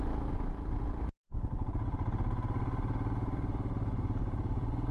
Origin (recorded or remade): recorded